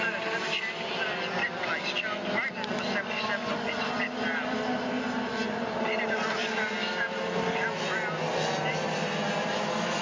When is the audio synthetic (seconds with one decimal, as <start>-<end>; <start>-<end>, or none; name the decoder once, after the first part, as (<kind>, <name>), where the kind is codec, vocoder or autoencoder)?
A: none